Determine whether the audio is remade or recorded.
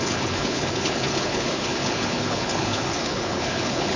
remade